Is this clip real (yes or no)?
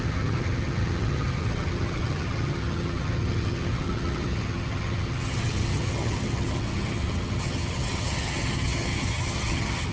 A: no